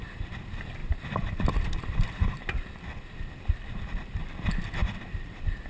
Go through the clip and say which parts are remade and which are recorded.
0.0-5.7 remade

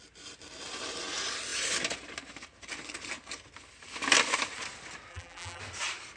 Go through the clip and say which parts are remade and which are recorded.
0.0-5.1 recorded; 5.1-5.6 remade; 5.6-6.2 recorded